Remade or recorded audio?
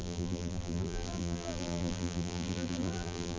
remade